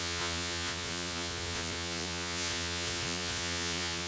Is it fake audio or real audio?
fake